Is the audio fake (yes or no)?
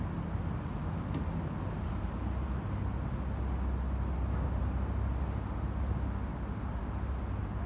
no